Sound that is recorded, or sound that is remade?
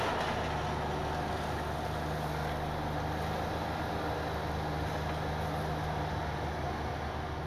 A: recorded